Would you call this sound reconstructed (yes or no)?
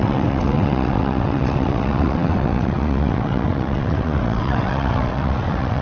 yes